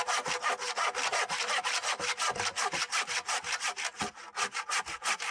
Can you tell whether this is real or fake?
real